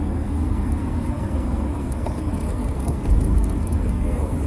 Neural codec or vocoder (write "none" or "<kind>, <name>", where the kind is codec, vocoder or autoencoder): codec, SNAC